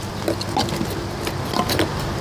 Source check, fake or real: real